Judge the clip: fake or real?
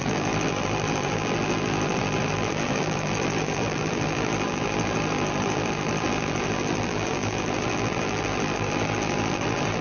fake